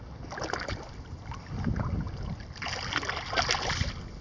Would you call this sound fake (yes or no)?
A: no